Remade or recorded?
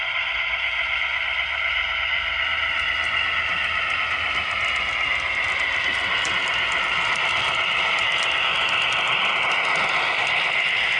recorded